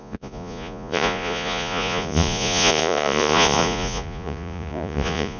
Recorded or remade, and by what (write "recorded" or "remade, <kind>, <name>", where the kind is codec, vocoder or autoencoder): remade, vocoder, Vocos